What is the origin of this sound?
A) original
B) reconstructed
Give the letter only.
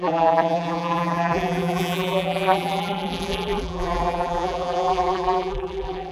B